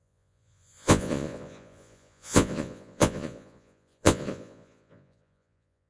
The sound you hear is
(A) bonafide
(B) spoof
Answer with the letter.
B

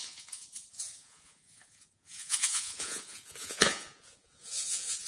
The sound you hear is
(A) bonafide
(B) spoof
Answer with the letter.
B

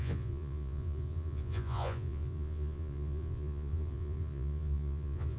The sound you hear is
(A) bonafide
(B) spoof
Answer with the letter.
B